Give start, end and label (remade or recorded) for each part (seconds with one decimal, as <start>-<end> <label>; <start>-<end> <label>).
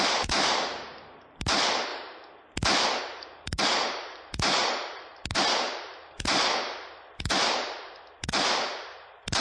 0.0-1.9 remade; 1.9-3.0 recorded; 3.0-9.4 remade